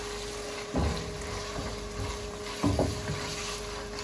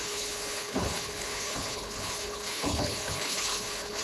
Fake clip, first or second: second